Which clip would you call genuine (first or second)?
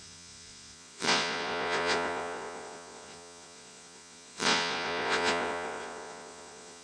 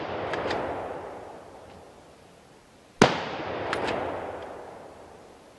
second